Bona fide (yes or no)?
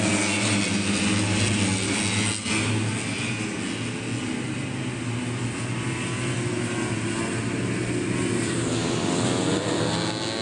yes